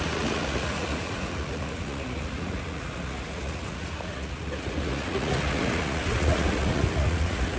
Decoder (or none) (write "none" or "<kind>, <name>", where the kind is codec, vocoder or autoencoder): vocoder, Vocos